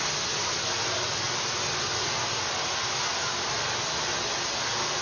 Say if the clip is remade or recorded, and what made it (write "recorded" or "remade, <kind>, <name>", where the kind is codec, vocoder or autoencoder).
recorded